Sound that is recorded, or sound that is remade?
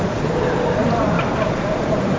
recorded